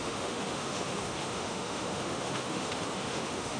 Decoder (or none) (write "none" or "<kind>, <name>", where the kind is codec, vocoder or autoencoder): autoencoder, DAC-VAE